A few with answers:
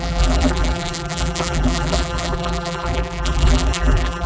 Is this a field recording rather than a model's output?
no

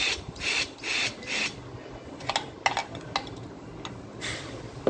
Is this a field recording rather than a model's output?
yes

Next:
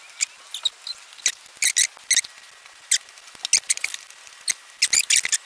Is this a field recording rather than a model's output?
yes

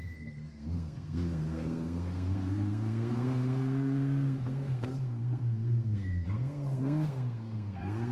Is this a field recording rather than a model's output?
no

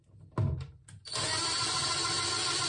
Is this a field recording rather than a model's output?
yes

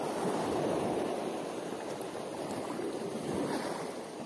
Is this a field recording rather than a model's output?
yes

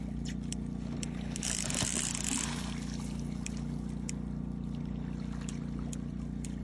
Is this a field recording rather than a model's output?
yes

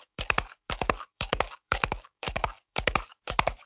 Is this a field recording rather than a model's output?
no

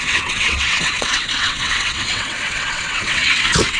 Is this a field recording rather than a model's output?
no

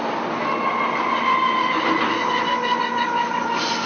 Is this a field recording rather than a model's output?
yes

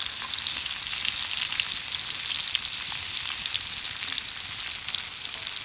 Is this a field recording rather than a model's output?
yes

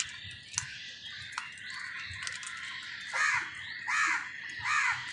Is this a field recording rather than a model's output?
yes